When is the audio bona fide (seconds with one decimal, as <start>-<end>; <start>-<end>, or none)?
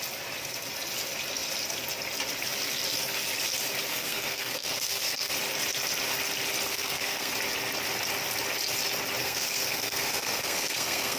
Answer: 0.0-3.9; 5.3-6.7; 7.3-9.2